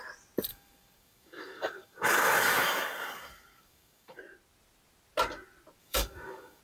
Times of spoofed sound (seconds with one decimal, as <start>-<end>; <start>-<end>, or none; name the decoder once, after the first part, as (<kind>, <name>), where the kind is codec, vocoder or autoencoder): 0.5-4.2 (codec, DAC); 5.8-6.6